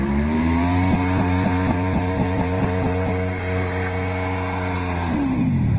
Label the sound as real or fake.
fake